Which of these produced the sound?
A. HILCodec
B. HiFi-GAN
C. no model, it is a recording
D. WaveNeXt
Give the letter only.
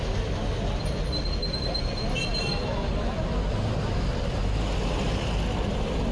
C